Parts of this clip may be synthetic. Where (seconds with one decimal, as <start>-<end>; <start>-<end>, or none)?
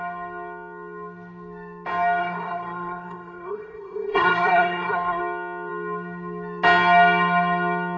2.2-5.2